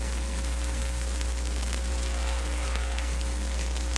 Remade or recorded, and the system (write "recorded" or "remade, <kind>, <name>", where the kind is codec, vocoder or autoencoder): remade, codec, SNAC